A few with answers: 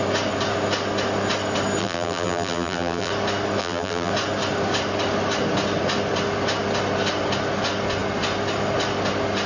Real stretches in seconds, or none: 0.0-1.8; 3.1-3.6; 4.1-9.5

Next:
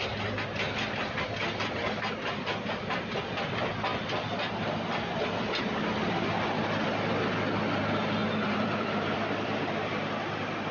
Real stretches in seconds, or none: 0.0-1.8; 3.2-8.2; 10.0-10.7

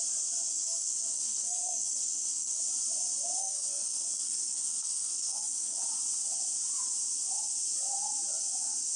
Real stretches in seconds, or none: 0.0-0.5; 2.6-3.4; 5.8-9.0

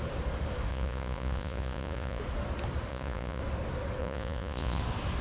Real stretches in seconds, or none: 0.0-0.7; 2.2-2.9; 3.4-4.0; 4.8-5.2

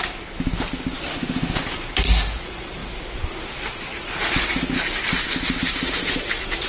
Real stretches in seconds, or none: 0.0-1.1; 1.6-6.7

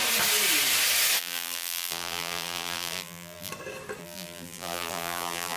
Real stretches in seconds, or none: 0.0-1.2; 3.5-4.0

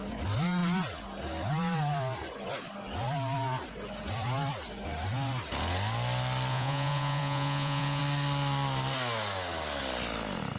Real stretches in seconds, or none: 0.0-6.5; 8.0-10.6

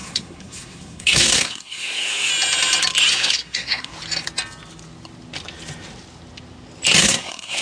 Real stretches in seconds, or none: 2.3-3.1; 3.9-7.0